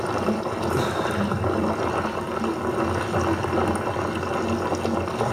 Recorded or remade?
recorded